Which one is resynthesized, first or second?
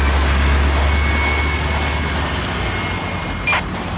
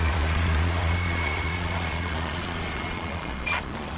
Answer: second